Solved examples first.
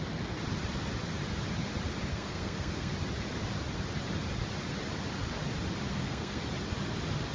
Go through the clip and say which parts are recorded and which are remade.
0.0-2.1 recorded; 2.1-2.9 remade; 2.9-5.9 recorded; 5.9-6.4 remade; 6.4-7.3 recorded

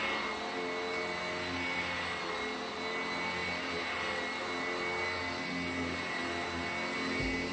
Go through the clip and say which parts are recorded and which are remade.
0.0-7.5 recorded

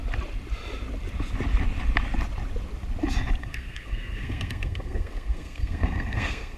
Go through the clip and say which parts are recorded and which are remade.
0.0-3.4 recorded; 3.4-6.6 remade